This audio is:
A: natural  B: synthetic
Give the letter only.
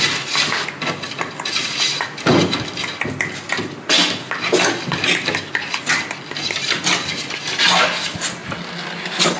A